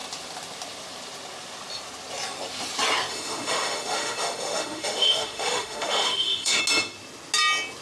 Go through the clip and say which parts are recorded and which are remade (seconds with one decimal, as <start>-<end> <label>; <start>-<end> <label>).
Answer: 0.0-3.1 recorded; 3.1-6.6 remade; 6.6-7.8 recorded